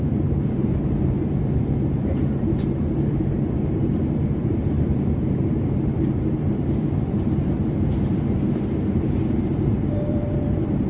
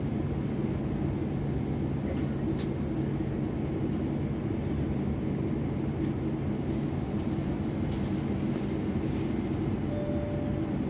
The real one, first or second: second